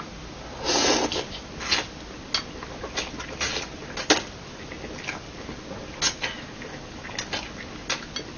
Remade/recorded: recorded